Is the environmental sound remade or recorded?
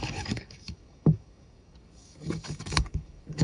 remade